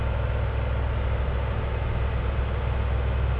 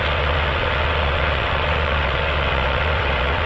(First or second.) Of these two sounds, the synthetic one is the second